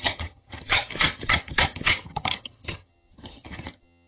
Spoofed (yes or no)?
yes